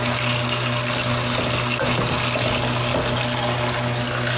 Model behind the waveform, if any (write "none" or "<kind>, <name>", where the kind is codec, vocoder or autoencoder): none